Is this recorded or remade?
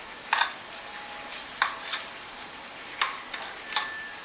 recorded